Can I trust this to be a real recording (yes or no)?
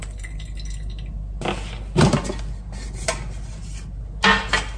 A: yes